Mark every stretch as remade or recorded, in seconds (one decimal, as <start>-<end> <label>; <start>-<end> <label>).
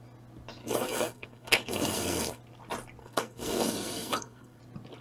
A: 0.0-0.6 recorded; 0.6-2.4 remade; 2.4-3.0 recorded; 3.0-4.6 remade; 4.6-5.0 recorded